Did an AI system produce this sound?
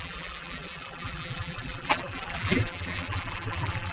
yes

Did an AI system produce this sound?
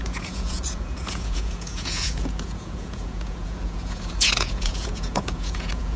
yes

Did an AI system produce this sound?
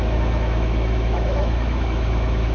yes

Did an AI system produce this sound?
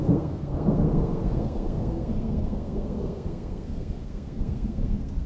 yes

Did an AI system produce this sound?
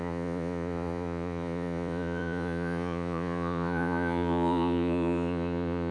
yes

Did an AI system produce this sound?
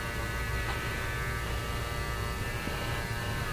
no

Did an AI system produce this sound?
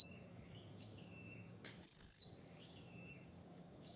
yes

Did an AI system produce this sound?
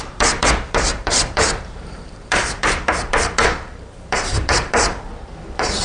yes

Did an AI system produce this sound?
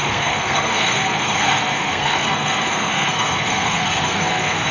yes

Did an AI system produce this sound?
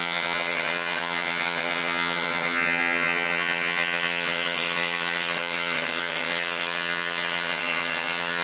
yes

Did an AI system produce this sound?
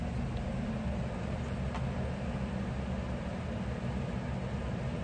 yes